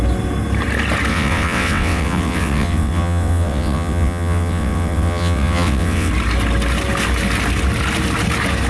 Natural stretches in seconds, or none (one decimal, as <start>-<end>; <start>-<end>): 0.0-1.1; 6.1-8.7